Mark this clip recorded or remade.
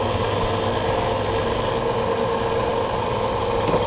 recorded